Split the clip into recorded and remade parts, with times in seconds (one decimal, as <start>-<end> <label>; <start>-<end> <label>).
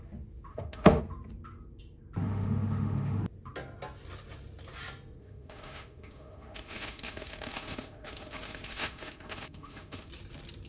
0.0-0.5 recorded; 0.5-1.0 remade; 1.0-2.2 recorded; 2.2-3.2 remade; 3.2-5.2 recorded; 5.2-10.1 remade; 10.1-10.7 recorded